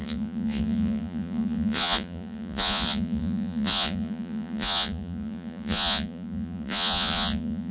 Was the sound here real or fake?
fake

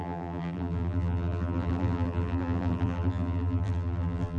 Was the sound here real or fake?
fake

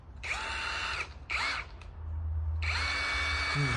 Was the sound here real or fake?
real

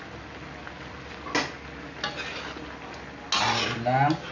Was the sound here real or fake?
real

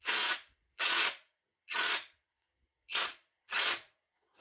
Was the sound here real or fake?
fake